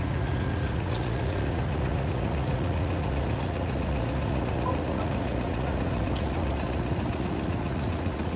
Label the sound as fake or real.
fake